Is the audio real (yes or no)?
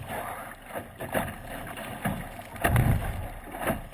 yes